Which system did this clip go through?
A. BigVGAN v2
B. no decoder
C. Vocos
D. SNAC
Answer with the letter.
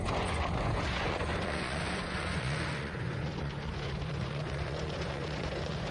C